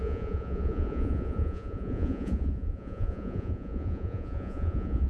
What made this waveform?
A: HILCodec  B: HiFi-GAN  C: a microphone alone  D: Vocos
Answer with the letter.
D